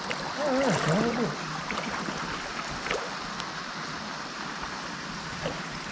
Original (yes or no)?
yes